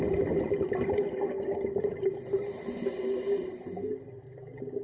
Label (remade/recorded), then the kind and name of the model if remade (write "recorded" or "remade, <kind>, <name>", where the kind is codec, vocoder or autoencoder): recorded